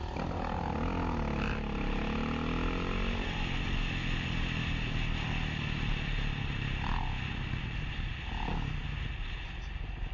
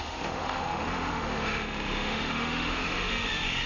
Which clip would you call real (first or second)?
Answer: first